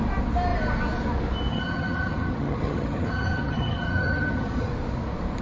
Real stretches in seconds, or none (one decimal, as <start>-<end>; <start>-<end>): 0.0-1.5; 4.7-5.4